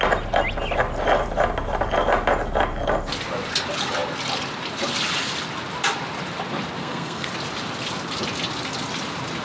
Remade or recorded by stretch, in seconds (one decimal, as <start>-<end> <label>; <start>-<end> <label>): 0.0-6.8 recorded; 6.8-7.3 remade; 7.3-9.4 recorded